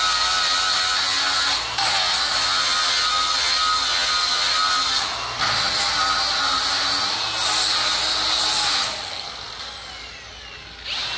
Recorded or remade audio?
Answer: recorded